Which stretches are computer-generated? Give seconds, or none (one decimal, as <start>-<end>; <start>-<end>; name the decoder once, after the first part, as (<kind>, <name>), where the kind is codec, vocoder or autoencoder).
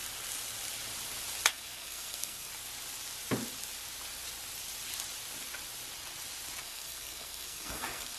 1.5-2.5 (codec, SNAC); 6.6-8.2